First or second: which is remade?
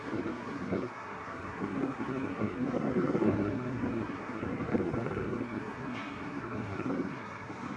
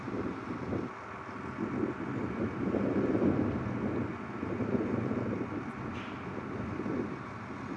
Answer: first